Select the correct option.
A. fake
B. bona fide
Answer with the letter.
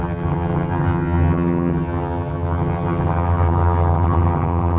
A